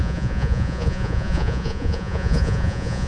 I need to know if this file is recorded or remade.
remade